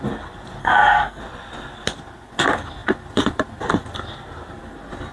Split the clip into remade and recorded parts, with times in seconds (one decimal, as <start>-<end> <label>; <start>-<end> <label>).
0.0-0.6 recorded; 0.6-1.2 remade; 1.2-5.1 recorded